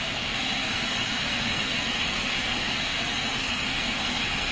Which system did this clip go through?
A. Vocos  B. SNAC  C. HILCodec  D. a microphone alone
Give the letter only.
B